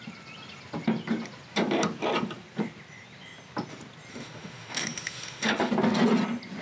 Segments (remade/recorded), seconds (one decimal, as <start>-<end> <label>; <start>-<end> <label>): 0.0-4.1 recorded; 4.1-5.7 remade; 5.7-6.6 recorded